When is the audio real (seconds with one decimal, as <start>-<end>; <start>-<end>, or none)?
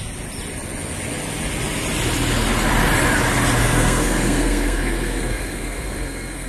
0.0-3.6